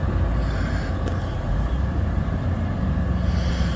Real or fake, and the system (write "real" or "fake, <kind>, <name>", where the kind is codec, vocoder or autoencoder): real